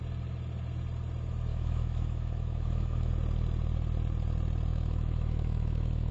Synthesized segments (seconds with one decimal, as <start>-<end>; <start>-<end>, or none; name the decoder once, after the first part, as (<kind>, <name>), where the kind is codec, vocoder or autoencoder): 1.5-3.1 (autoencoder, DAC-VAE); 4.7-6.1

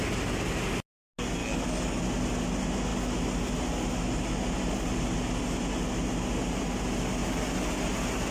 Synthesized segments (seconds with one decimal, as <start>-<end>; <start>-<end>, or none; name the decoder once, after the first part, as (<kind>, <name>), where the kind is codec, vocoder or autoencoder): 1.4-2.0 (codec, DAC)

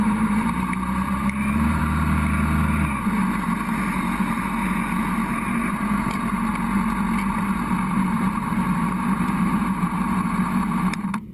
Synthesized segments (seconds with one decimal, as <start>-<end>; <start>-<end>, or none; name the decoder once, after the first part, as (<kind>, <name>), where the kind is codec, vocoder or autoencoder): 0.0-1.8 (vocoder, BigVGAN v2); 5.3-6.5; 7.3-11.3

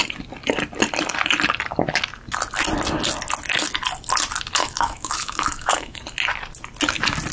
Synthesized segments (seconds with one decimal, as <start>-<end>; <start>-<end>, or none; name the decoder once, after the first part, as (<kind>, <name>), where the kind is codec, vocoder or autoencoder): 4.6-6.0 (autoencoder, DAC-VAE)

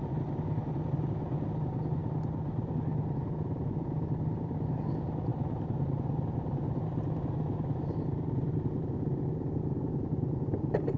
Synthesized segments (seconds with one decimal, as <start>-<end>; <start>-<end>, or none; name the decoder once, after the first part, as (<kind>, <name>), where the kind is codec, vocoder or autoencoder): none

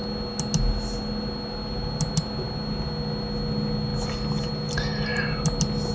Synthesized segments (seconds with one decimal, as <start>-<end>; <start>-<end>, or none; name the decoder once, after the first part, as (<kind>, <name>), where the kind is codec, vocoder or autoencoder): none

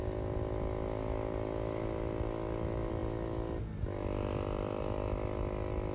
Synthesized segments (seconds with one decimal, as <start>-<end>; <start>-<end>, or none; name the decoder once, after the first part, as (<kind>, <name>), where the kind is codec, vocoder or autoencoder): none

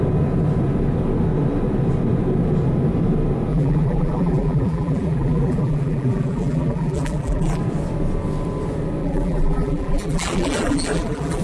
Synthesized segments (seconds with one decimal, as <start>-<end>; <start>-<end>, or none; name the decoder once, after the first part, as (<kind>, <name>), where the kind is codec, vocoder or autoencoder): 3.5-7.6 (vocoder, BigVGAN v2); 9.0-11.4